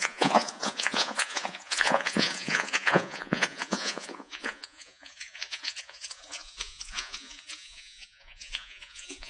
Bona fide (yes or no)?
no